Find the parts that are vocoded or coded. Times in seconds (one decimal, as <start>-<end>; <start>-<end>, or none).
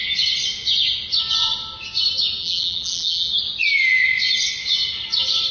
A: 2.4-3.3